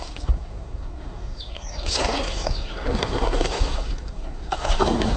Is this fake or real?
fake